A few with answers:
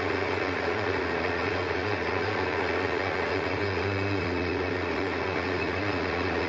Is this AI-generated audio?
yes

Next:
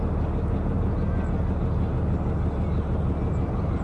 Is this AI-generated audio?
no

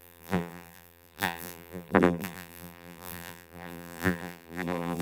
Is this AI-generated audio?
yes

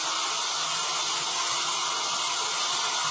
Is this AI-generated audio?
no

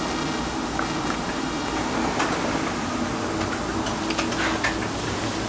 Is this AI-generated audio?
no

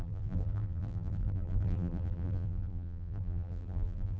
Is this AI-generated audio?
yes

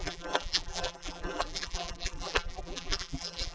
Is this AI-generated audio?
yes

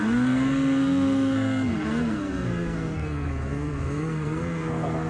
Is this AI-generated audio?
yes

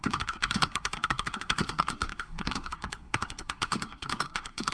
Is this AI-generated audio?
yes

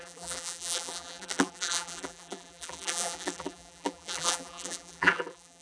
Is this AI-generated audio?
yes